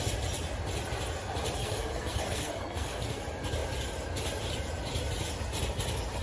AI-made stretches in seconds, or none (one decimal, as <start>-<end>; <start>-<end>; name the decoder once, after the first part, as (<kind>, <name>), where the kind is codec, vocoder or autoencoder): 1.6-3.2 (codec, SNAC)